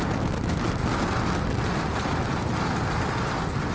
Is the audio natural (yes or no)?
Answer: yes